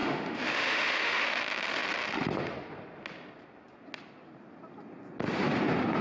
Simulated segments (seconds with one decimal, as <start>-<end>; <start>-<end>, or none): 0.0-1.4